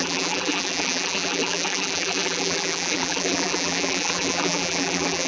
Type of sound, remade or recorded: remade